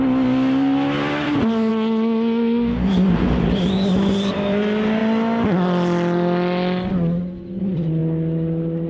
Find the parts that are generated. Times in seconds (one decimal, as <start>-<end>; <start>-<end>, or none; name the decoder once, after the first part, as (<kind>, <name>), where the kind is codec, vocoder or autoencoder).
0.0-1.7 (vocoder, BigVGAN v2); 4.3-5.0; 7.6-8.0

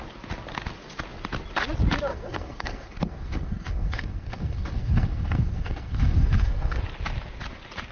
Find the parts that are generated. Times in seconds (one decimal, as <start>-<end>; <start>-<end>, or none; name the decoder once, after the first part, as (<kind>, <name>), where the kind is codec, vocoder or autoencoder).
2.1-6.8 (codec, SNAC)

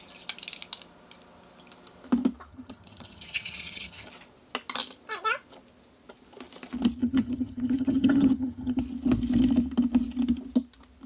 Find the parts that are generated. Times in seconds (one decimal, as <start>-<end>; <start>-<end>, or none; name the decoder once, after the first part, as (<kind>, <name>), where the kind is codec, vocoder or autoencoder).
2.5-4.1 (vocoder, HiFi-GAN); 7.0-8.8

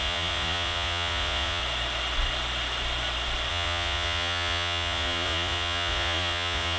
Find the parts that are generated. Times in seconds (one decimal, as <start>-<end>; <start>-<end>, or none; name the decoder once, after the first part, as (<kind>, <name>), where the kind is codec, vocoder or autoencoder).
0.0-1.6 (vocoder, Vocos); 3.5-6.8